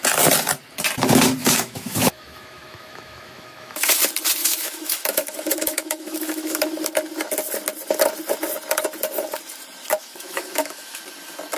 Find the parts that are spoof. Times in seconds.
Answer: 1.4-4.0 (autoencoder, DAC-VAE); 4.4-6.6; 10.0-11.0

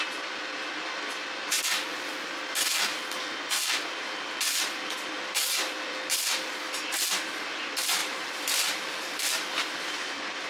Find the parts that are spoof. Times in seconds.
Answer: 8.0-10.5 (vocoder, BigVGAN v2)